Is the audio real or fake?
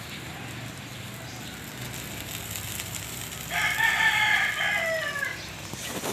fake